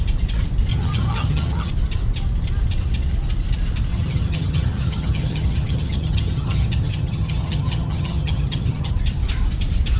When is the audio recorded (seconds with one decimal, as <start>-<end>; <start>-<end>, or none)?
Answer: 0.0-0.7; 1.7-3.9; 8.9-10.0